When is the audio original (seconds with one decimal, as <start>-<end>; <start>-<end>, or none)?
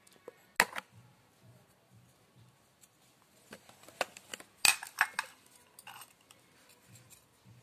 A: 0.0-7.6